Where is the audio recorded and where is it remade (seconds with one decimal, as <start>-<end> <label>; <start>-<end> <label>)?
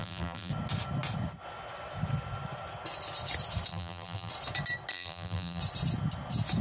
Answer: 0.0-0.5 remade; 0.5-3.7 recorded; 3.7-4.3 remade; 4.3-4.9 recorded; 4.9-5.6 remade; 5.6-6.6 recorded